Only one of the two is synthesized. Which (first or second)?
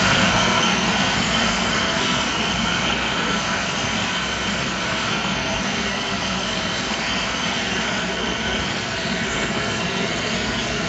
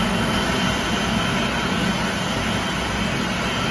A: first